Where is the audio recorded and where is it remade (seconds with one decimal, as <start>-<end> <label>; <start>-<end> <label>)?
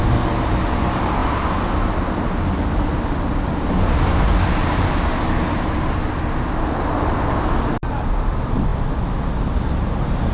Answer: 0.0-10.3 recorded